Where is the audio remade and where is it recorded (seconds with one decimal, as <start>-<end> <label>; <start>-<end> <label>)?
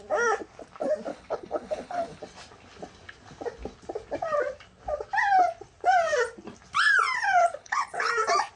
0.0-1.1 recorded; 1.1-2.2 remade; 2.2-7.4 recorded; 7.4-8.1 remade; 8.1-8.6 recorded